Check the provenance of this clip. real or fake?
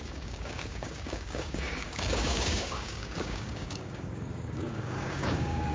fake